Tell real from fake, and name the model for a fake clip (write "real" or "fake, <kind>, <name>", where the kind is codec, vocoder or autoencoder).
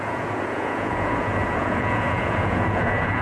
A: fake, vocoder, Vocos